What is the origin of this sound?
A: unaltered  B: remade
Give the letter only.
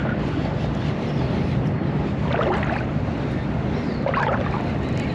A